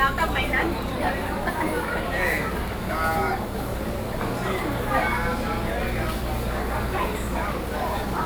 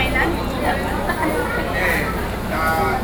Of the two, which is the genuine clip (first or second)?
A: second